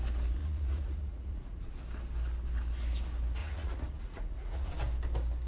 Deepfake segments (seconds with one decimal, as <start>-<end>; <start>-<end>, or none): 0.4-1.7; 3.4-4.7